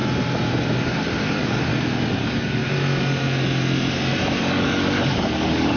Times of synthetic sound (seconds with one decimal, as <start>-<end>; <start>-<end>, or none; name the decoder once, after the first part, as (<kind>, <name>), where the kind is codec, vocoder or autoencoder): 1.2-1.7 (codec, DAC); 2.2-2.6; 4.4-5.8